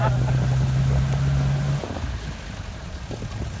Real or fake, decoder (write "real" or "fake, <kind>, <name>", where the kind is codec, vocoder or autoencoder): real